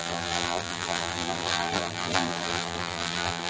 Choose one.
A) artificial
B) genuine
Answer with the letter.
A